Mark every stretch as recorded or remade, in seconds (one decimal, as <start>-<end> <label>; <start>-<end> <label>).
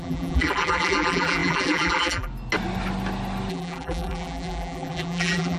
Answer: 0.0-2.3 remade; 2.3-3.5 recorded; 3.5-5.6 remade